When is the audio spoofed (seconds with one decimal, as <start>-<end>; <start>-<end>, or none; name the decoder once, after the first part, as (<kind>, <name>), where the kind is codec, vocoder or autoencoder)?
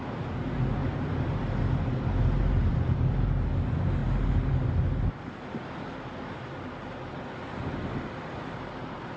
none